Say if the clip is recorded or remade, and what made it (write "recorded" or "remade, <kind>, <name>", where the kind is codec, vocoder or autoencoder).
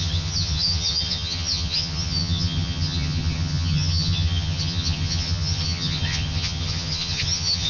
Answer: remade, vocoder, HiFi-GAN